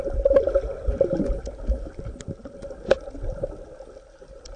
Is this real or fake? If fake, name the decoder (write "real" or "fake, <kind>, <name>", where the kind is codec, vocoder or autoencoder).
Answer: real